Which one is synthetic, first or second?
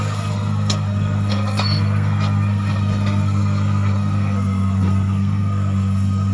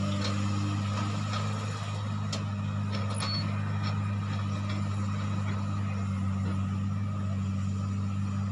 first